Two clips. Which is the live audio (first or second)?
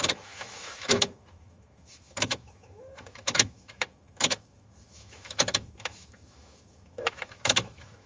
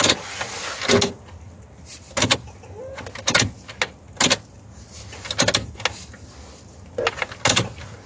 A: second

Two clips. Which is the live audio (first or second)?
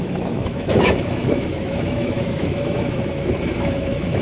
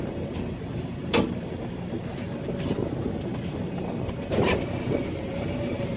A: second